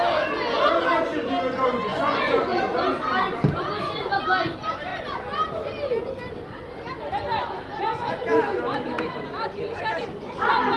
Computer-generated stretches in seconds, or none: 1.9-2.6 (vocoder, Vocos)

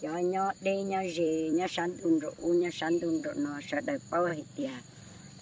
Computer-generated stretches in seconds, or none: 0.6-2.8 (vocoder, BigVGAN v2); 4.3-5.4

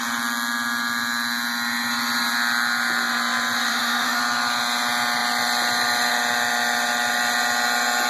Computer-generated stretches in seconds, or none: 3.7-4.2 (autoencoder, DAC-VAE)

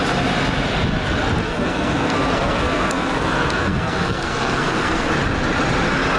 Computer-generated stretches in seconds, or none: 1.4-5.1 (codec, SNAC)

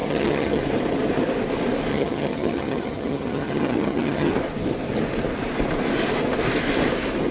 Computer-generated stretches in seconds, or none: 0.0-0.6 (vocoder, HiFi-GAN); 1.9-4.3

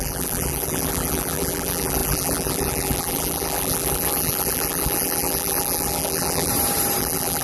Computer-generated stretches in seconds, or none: 0.0-6.5 (vocoder, BigVGAN v2); 7.0-7.4